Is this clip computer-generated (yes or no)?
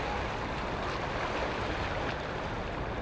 no